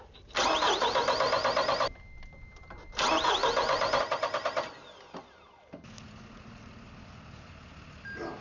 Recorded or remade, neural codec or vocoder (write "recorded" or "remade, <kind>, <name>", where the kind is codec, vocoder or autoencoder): recorded